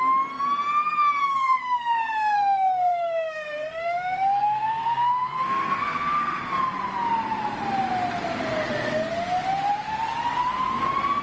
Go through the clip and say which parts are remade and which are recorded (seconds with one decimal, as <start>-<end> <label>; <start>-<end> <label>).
0.0-1.2 recorded; 1.2-6.4 remade; 6.4-11.2 recorded